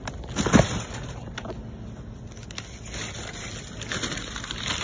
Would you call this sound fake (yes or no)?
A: no